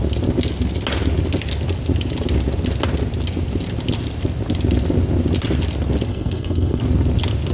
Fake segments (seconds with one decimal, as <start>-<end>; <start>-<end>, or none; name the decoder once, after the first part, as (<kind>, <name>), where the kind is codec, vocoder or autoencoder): 6.1-6.8 (codec, SNAC)